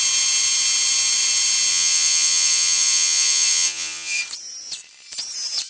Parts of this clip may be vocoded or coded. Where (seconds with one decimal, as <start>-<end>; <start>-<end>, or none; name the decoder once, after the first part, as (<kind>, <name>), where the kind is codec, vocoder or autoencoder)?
1.7-4.2 (vocoder, Vocos)